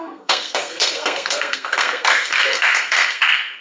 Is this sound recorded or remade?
remade